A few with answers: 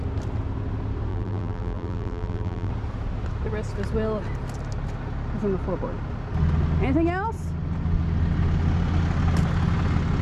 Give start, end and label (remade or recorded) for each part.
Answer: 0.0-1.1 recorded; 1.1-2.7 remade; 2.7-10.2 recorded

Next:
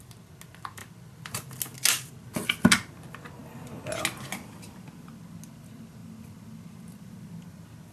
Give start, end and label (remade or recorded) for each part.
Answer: 0.0-7.9 recorded

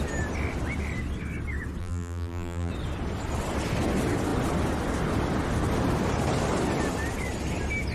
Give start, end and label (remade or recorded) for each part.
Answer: 0.0-1.8 recorded; 1.8-2.7 remade; 2.7-7.9 recorded

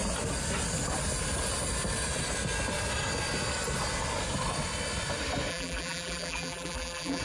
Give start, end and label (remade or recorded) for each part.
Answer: 0.0-5.5 recorded; 5.5-7.2 remade

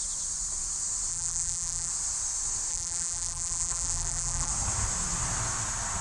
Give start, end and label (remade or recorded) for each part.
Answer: 0.0-1.1 recorded; 1.1-1.9 remade; 1.9-2.7 recorded; 2.7-4.5 remade; 4.5-6.0 recorded

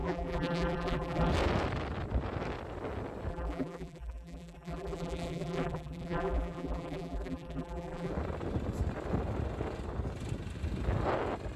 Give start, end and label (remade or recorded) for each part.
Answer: 0.0-1.3 remade; 1.3-3.3 recorded; 3.3-8.1 remade; 8.1-11.6 recorded

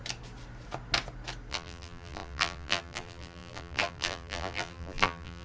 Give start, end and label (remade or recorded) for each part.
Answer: 0.0-1.5 recorded; 1.5-5.4 remade